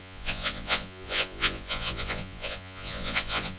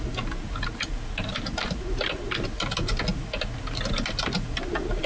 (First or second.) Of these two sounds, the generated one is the first